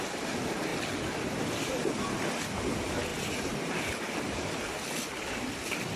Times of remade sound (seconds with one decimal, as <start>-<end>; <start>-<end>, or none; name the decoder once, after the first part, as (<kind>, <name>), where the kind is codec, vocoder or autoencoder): 3.1-3.8 (vocoder, BigVGAN v2)